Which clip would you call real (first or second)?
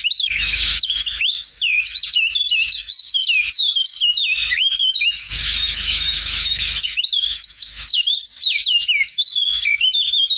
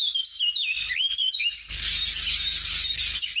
second